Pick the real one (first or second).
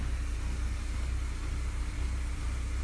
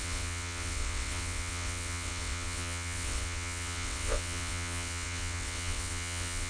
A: first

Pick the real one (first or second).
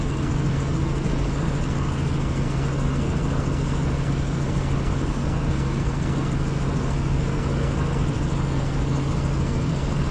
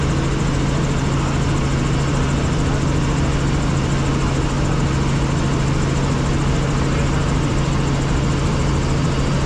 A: second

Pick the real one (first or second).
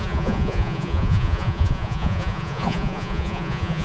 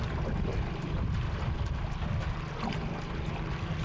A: second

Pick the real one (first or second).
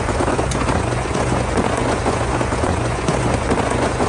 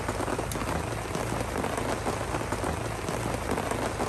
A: second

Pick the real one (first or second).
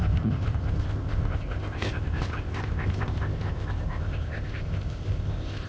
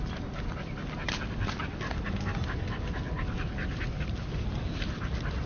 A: second